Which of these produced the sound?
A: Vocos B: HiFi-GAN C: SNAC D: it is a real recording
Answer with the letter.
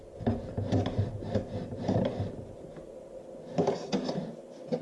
D